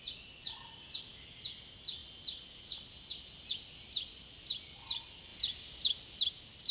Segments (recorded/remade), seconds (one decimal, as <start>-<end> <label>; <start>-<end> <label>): 0.0-6.7 recorded